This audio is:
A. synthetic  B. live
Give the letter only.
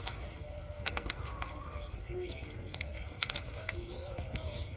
A